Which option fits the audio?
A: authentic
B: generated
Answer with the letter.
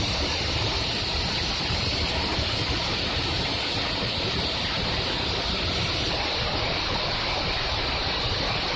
A